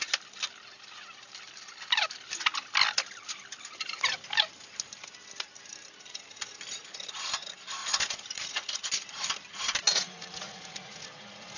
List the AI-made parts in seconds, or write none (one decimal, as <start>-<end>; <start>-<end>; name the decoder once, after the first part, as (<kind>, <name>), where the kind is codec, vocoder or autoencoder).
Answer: 7.8-8.9 (vocoder, Vocos); 9.9-11.6